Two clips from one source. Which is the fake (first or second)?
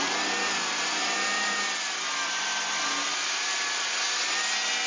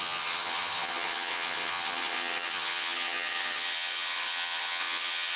second